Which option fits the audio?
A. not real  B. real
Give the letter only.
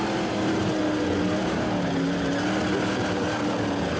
B